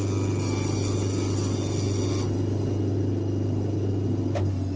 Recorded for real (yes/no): yes